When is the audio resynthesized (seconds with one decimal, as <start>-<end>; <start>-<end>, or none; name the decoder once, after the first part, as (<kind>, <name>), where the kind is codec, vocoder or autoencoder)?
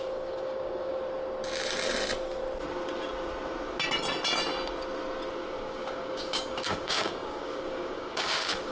0.0-0.9 (codec, DAC); 5.6-8.7